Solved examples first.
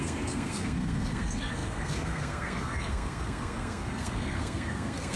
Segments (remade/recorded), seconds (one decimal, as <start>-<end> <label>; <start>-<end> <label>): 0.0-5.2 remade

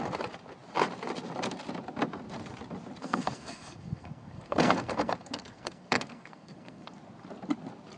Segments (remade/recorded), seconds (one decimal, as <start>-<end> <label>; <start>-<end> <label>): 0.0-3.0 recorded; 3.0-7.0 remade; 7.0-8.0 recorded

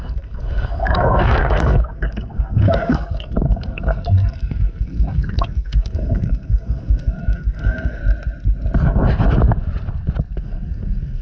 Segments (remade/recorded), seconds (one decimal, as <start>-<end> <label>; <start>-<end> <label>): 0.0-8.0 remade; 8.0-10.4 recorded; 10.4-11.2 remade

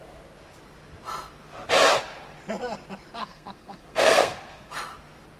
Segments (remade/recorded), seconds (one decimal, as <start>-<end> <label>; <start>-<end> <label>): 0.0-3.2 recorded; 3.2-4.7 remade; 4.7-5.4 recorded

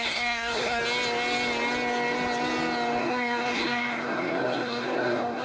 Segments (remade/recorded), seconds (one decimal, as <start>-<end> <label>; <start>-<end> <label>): 0.0-0.8 remade; 0.8-3.0 recorded; 3.0-5.4 remade

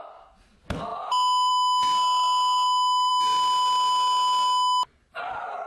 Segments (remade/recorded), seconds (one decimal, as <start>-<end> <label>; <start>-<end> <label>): 0.0-5.7 recorded

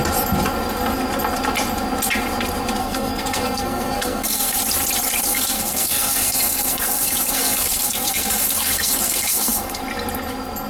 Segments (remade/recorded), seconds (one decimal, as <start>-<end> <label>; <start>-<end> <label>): 0.0-2.8 recorded; 2.8-4.6 remade; 4.6-5.3 recorded; 5.3-9.8 remade; 9.8-10.7 recorded